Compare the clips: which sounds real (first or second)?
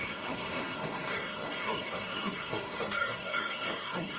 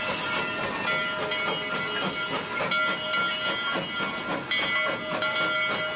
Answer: second